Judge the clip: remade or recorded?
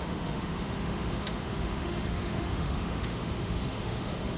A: remade